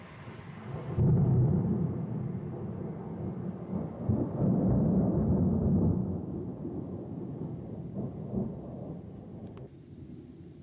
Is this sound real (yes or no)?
yes